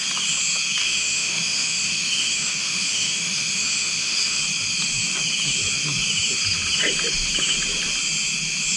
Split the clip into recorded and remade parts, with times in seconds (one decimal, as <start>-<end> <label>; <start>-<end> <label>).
0.0-0.8 recorded; 0.8-4.4 remade; 4.4-8.8 recorded